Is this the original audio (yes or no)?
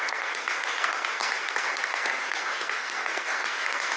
no